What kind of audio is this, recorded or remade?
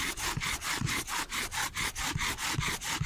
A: recorded